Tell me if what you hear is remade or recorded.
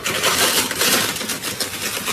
remade